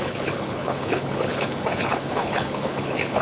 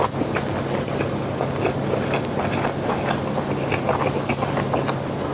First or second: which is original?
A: second